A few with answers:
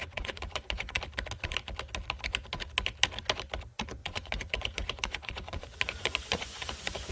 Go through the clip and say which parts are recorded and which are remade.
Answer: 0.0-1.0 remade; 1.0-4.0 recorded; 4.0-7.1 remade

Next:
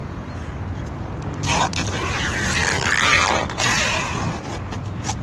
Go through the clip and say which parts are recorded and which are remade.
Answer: 0.0-0.5 remade; 0.5-5.2 recorded